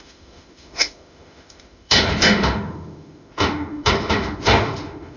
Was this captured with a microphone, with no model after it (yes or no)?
no